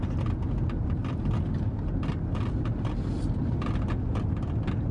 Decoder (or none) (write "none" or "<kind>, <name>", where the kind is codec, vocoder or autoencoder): none